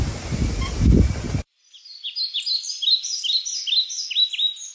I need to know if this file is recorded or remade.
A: recorded